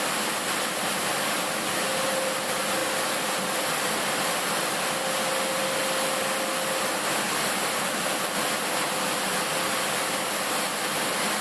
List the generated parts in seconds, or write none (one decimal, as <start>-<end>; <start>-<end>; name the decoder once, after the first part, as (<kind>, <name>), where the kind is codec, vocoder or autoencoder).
none